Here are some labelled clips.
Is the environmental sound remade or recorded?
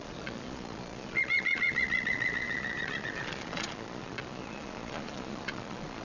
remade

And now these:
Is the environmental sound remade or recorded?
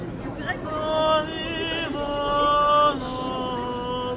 recorded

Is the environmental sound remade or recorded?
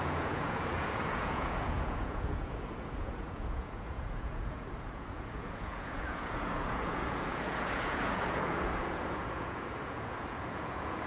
remade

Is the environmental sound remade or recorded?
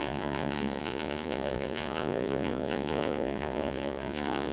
remade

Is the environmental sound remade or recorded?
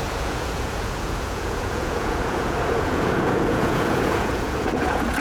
remade